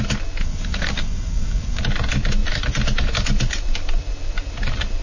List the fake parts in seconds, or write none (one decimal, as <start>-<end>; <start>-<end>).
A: 0.4-1.8